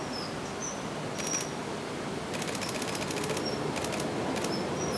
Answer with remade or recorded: recorded